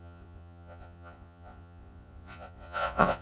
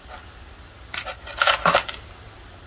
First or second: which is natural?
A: second